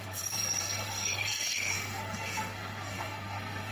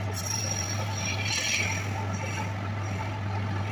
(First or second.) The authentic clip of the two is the second